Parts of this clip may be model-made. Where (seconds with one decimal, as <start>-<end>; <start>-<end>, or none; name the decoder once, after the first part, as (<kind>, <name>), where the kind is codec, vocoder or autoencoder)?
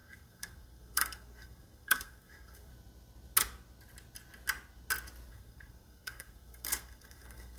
0.0-2.7 (codec, SNAC); 5.3-7.6